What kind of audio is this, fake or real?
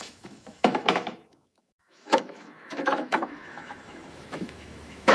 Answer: fake